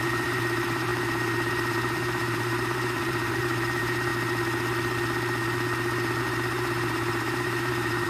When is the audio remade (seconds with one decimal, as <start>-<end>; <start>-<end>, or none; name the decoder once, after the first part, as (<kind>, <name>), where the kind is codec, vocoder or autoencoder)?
0.0-4.1 (vocoder, BigVGAN v2); 6.2-8.1